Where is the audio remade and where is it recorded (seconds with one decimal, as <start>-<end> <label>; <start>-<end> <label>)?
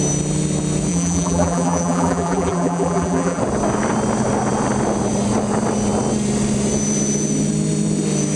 0.0-0.9 recorded; 0.9-3.4 remade; 3.4-8.4 recorded